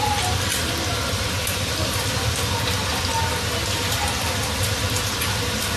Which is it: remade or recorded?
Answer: remade